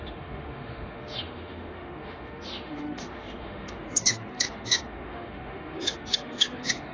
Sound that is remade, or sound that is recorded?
remade